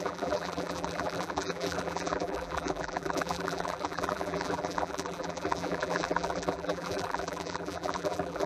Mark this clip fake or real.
fake